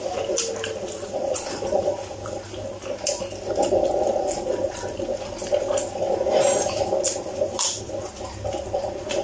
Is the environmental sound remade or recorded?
recorded